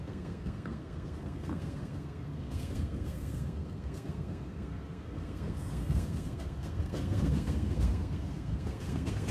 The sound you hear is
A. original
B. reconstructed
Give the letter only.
B